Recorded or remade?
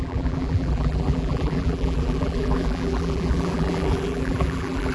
remade